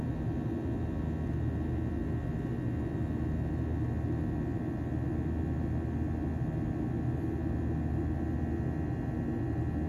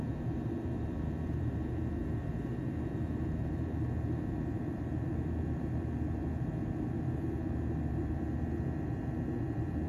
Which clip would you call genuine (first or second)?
first